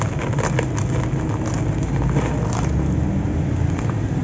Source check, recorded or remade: recorded